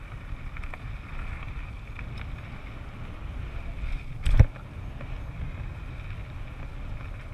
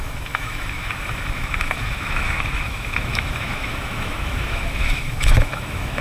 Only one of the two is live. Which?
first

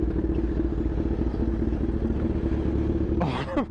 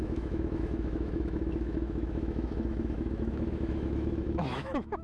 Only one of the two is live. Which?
first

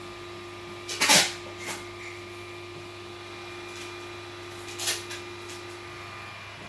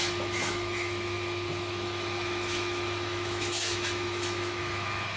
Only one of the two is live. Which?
first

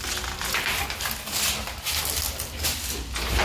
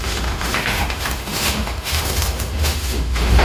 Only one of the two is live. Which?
first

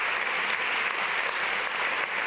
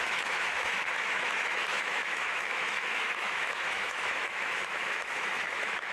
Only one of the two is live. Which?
first